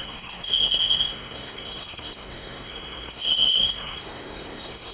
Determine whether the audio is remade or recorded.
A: remade